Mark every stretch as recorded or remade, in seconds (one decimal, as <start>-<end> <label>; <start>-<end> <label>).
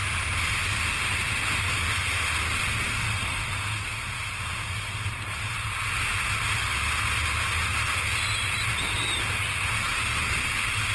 0.0-10.9 recorded